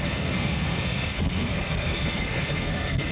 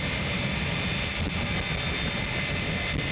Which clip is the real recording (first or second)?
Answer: second